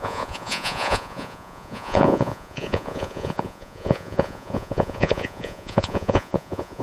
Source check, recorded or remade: remade